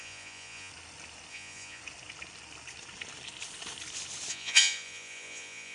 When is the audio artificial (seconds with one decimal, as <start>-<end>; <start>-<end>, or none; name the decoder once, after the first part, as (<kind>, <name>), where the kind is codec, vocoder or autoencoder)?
0.0-0.7 (vocoder, Vocos); 1.3-1.8; 4.3-5.7